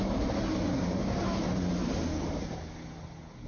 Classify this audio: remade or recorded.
recorded